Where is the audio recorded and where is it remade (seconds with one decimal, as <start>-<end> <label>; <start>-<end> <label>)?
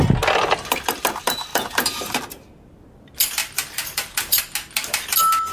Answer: 0.0-1.5 recorded; 1.5-2.5 remade; 2.5-3.4 recorded; 3.4-4.4 remade; 4.4-5.5 recorded